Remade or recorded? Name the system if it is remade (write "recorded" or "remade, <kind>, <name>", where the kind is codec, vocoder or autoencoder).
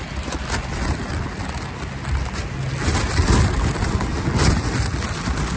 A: recorded